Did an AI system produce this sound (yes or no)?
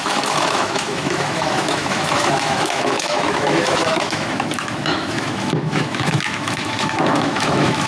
yes